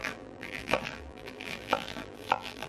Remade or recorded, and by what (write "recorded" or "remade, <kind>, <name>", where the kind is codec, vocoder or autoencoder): remade, vocoder, BigVGAN v2